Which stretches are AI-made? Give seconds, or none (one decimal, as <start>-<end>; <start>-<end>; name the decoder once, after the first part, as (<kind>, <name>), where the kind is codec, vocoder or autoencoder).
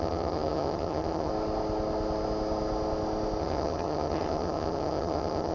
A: 0.0-1.3 (vocoder, HiFi-GAN); 3.4-5.5